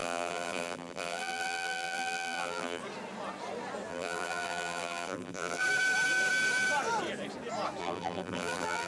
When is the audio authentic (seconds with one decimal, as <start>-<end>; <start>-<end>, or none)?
2.8-3.9; 5.6-7.8